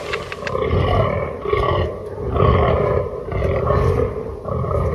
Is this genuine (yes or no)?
yes